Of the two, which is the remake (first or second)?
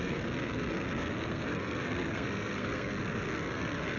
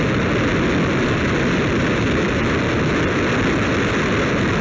first